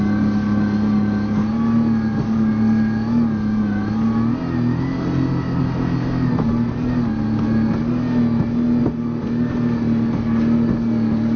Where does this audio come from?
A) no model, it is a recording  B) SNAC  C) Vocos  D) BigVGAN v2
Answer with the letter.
A